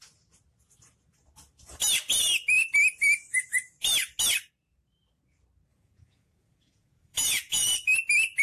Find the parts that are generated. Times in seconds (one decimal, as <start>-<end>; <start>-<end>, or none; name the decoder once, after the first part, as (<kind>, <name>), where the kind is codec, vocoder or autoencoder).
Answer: 5.7-7.9 (vocoder, Vocos)